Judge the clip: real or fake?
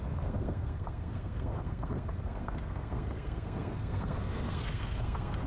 fake